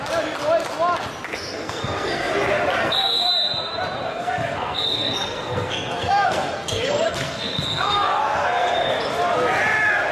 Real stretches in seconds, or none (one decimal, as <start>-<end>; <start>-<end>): 0.0-1.3; 2.3-2.8; 3.3-4.1; 8.9-10.1